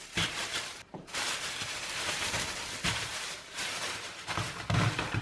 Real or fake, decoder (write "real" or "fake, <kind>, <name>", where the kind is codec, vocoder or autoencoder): fake, vocoder, BigVGAN v2